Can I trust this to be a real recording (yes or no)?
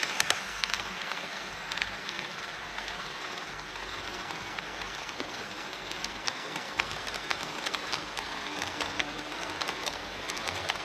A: no